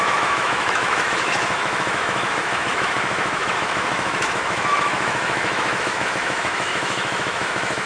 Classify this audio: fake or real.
fake